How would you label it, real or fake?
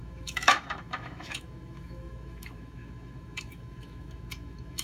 fake